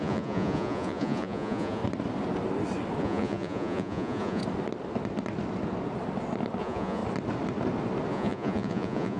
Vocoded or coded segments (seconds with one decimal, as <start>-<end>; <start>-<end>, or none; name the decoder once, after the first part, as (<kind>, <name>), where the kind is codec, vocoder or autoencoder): 0.0-1.8 (vocoder, Vocos); 3.0-4.4; 6.6-7.0; 8.1-9.2